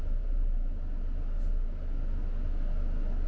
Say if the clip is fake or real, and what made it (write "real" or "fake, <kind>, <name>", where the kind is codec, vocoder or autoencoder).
real